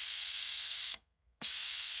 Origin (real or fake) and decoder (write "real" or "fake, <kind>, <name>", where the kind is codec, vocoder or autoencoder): fake, codec, SNAC